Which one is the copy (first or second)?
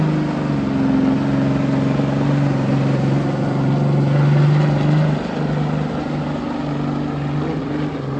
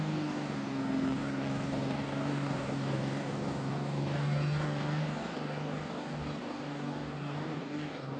second